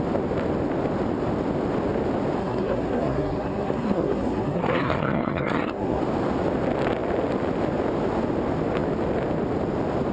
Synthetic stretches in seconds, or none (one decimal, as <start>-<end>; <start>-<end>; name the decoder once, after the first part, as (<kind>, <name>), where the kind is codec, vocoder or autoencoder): 2.4-6.0 (codec, SNAC)